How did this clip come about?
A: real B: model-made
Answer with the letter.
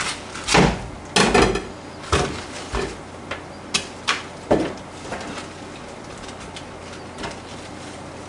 A